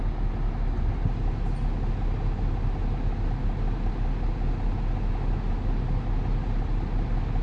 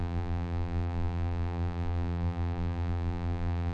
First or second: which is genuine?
first